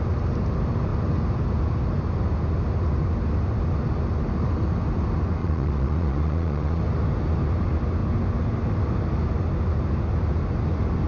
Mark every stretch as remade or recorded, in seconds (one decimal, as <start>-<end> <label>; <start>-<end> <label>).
0.0-5.4 recorded; 5.4-6.8 remade; 6.8-11.1 recorded